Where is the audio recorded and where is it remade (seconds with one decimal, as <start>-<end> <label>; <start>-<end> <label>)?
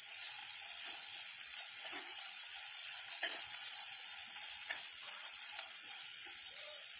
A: 0.0-7.0 remade